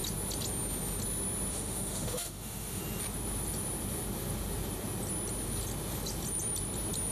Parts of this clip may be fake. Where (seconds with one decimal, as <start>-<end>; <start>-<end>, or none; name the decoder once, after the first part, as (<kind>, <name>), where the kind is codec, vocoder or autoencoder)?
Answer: 1.5-2.8 (autoencoder, DAC-VAE)